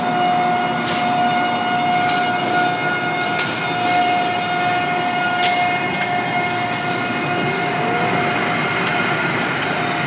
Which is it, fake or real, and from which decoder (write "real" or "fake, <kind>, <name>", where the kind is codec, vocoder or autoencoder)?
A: real